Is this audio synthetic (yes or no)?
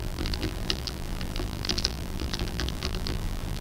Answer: yes